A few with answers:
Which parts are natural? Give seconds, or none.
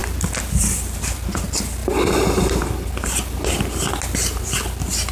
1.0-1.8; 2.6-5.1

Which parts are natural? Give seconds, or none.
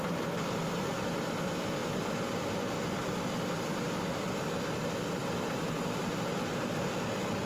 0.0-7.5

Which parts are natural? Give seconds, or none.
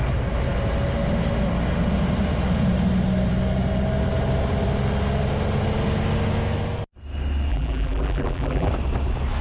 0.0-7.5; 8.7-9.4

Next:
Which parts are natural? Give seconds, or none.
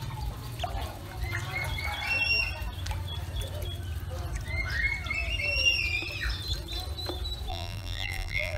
0.0-7.5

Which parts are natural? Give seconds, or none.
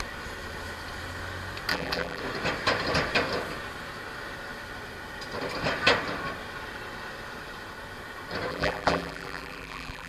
0.0-1.7; 2.2-8.5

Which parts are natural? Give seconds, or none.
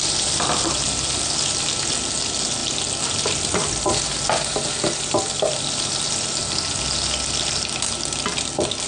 0.0-8.9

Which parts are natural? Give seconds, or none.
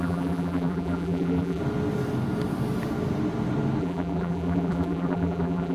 1.6-3.8